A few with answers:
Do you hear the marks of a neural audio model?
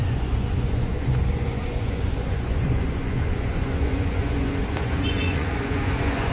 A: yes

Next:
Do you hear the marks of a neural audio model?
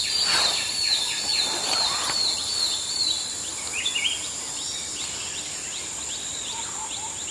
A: no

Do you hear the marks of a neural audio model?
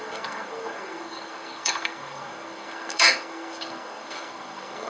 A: yes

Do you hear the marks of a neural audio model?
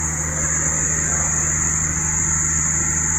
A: no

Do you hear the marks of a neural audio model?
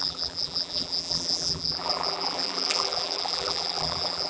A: yes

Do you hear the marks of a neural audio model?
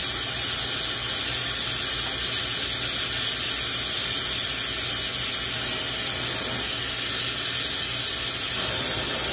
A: no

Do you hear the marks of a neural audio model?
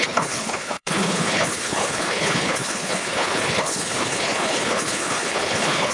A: yes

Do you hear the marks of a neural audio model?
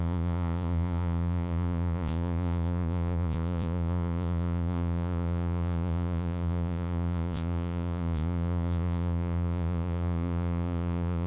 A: yes